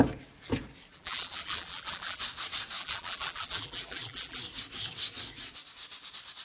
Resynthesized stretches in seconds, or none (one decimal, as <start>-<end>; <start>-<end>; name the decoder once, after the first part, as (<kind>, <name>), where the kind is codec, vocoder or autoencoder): 0.9-2.2 (vocoder, BigVGAN v2); 2.8-4.4